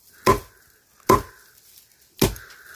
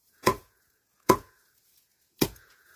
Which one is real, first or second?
first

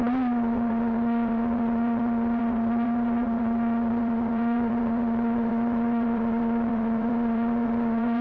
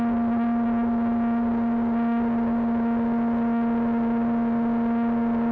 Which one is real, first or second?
second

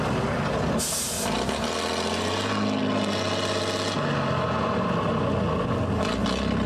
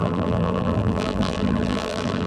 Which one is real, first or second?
first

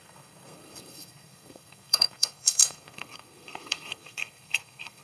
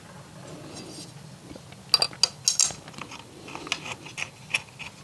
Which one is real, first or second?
second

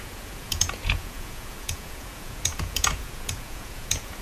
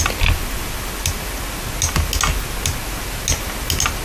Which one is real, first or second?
second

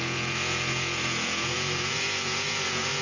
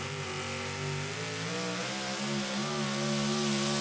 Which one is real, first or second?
second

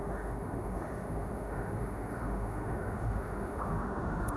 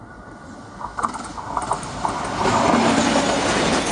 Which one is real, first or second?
second